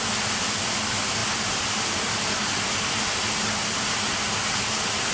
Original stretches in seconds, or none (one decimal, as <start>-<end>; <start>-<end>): 0.0-5.1